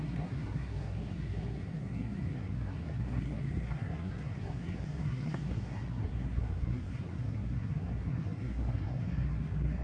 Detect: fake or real fake